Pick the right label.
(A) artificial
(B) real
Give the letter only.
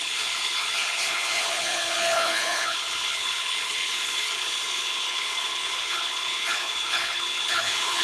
A